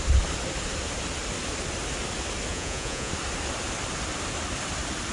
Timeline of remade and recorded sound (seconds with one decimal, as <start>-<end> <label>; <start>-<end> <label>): 0.0-2.5 recorded; 2.5-3.1 remade; 3.1-5.1 recorded